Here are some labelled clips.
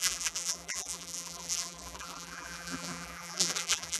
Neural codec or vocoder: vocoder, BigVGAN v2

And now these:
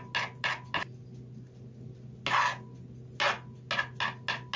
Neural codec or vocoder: none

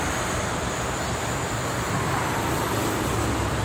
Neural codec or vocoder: none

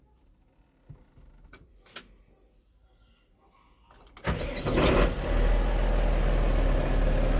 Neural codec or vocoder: none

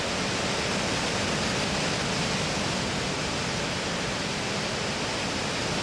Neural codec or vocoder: none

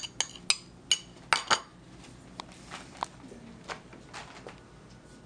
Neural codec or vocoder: none